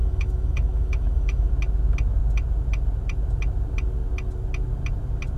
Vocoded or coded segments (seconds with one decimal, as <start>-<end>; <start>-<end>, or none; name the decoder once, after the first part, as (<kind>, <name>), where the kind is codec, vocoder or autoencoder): 0.0-1.5 (autoencoder, DAC-VAE)